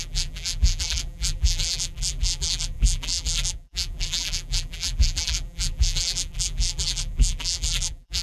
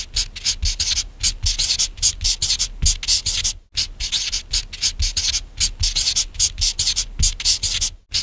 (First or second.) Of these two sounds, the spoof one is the first